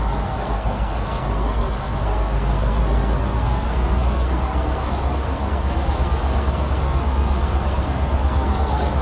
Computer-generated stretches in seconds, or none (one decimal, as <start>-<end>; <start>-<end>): 0.0-9.0